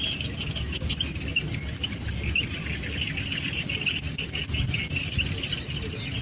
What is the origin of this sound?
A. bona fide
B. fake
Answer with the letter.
A